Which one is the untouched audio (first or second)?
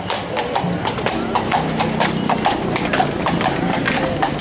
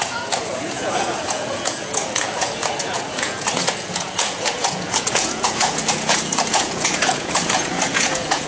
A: first